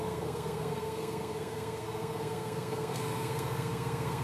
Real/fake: fake